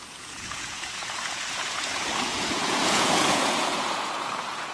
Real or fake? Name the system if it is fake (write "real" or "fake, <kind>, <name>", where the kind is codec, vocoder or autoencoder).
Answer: fake, vocoder, Vocos